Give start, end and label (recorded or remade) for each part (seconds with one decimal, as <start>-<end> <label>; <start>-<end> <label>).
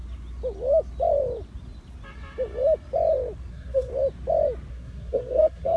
0.0-3.5 recorded; 3.5-3.9 remade; 3.9-4.7 recorded; 4.7-5.8 remade